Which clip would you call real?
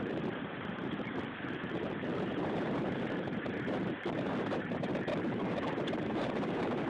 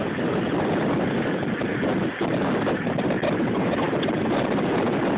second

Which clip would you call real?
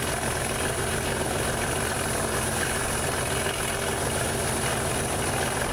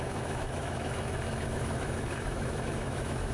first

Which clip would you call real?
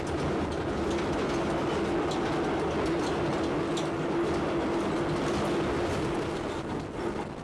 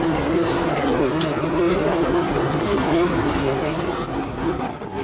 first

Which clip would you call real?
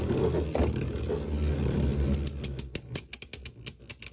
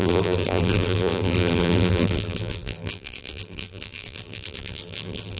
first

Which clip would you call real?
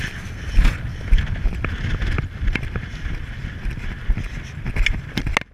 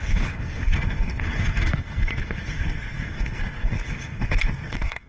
first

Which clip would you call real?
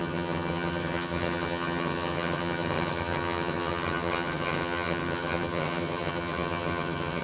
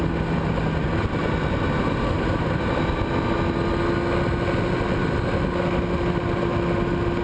second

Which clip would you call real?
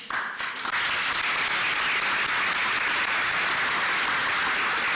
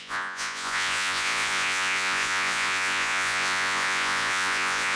first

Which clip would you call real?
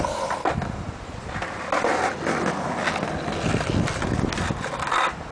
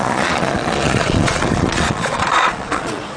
first